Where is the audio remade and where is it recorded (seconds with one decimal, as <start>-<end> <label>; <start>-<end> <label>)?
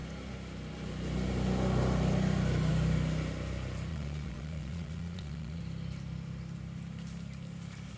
0.0-3.9 recorded; 3.9-5.6 remade; 5.6-8.0 recorded